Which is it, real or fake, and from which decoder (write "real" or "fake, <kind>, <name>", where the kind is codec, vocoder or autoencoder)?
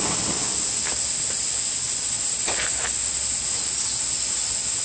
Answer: real